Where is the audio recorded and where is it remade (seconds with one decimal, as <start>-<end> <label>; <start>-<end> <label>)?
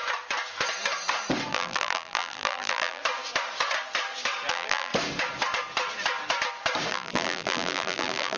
0.0-1.5 recorded; 1.5-3.0 remade; 3.0-4.5 recorded; 4.5-4.9 remade; 4.9-6.9 recorded; 6.9-8.4 remade